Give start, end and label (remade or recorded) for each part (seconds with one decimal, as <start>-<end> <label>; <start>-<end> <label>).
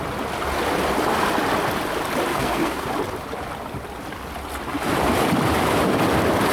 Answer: 0.0-2.3 recorded; 2.3-2.9 remade; 2.9-6.5 recorded